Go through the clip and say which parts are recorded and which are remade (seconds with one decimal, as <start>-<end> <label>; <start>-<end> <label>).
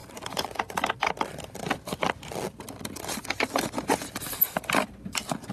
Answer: 0.0-5.5 recorded